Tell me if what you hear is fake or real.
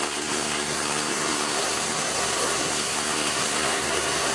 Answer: fake